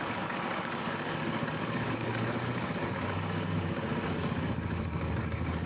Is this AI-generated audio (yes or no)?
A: yes